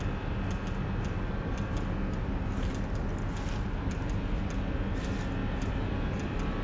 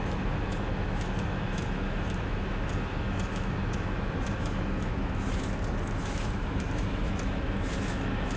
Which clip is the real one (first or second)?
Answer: first